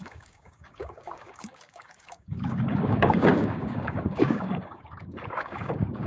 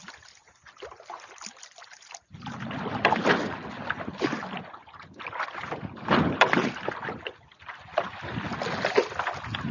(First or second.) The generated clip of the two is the first